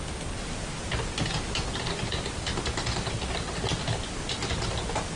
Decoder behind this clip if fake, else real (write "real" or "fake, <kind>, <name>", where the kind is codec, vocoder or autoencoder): real